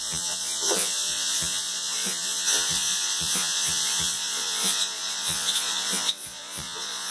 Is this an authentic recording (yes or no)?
no